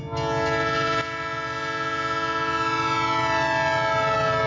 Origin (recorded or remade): recorded